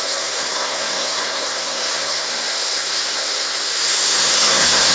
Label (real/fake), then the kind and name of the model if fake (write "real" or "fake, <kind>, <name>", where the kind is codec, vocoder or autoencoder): fake, codec, SNAC